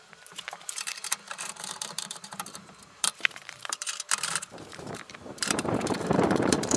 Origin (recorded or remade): remade